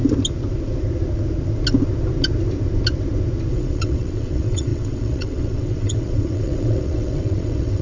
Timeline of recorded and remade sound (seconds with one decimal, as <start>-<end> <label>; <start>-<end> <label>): 0.0-3.5 recorded; 3.5-7.8 remade